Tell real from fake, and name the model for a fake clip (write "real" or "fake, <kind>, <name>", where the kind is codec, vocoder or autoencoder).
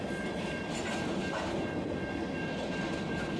real